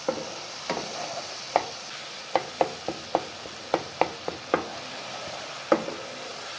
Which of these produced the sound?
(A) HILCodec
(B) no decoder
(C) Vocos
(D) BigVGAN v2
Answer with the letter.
B